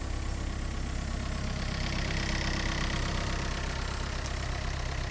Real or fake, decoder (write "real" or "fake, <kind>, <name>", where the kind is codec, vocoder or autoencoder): real